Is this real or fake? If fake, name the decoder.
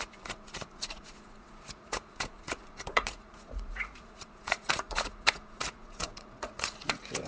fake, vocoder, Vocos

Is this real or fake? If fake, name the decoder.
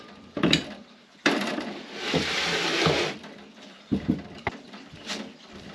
fake, vocoder, BigVGAN v2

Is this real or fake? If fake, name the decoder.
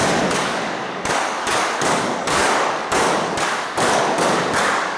fake, codec, DAC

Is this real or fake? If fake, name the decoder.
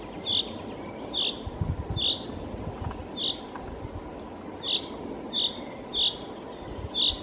real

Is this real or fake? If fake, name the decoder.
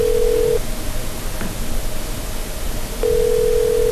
real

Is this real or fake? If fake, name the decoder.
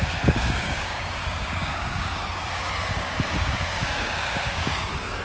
fake, codec, DAC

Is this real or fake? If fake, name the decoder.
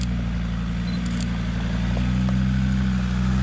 real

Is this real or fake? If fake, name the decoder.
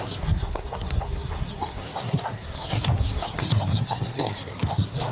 fake, codec, SNAC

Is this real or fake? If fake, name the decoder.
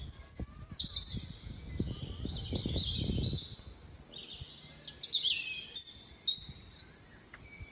real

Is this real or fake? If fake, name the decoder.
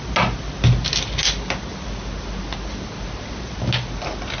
real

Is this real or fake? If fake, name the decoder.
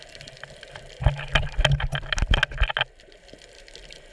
real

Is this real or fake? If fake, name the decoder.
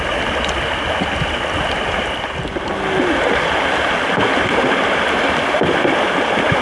real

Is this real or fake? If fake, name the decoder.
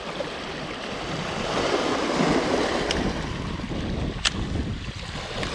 real